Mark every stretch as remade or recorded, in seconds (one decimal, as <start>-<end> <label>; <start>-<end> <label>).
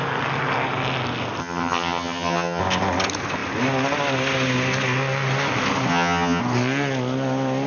0.0-1.4 recorded; 1.4-2.6 remade; 2.6-5.9 recorded; 5.9-6.4 remade; 6.4-7.7 recorded